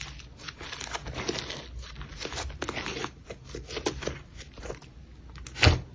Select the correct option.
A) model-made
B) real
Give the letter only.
B